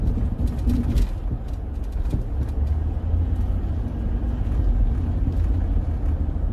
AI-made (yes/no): no